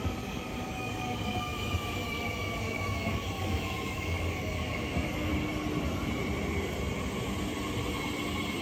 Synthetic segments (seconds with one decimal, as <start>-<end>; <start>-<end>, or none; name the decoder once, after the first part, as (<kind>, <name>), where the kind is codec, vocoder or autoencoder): 0.0-5.3 (codec, DAC)